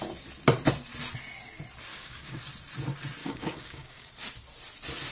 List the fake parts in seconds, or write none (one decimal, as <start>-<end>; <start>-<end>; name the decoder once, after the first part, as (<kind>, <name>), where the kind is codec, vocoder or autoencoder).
1.9-2.4 (codec, DAC); 3.2-4.1